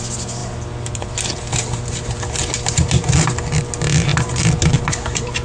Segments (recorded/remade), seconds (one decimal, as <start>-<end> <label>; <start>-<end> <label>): 0.0-5.4 recorded